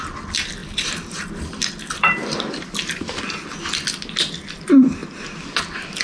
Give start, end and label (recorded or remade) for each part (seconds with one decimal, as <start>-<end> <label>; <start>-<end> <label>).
0.0-0.6 recorded; 0.6-3.2 remade; 3.2-6.0 recorded